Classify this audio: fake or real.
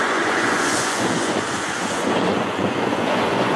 fake